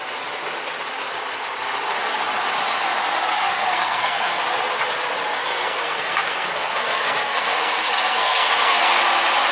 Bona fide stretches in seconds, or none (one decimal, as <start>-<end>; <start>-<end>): 0.0-3.3; 4.4-5.4; 9.0-9.5